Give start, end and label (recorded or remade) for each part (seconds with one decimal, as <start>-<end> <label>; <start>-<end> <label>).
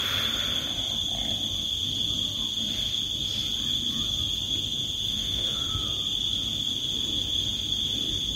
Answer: 0.0-5.1 recorded; 5.1-5.7 remade; 5.7-8.4 recorded